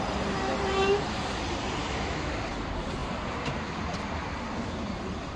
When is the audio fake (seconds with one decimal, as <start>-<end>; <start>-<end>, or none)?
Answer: 1.8-2.3